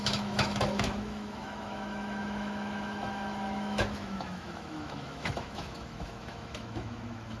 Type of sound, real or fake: fake